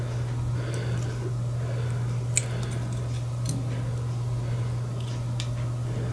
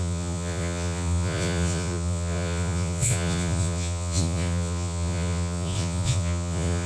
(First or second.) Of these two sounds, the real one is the first